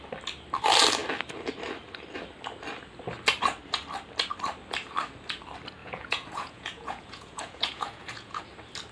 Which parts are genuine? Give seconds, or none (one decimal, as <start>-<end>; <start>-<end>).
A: 0.0-5.8; 8.4-8.9